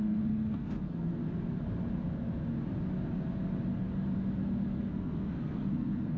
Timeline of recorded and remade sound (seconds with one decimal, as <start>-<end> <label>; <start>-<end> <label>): 0.0-1.1 remade; 1.1-4.8 recorded; 4.8-6.2 remade